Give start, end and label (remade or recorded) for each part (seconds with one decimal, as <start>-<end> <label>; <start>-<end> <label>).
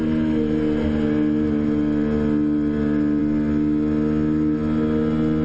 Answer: 0.0-5.4 recorded